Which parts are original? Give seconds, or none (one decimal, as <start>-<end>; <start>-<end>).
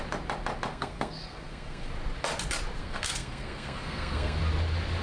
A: 0.0-0.7; 1.9-2.8; 4.4-5.0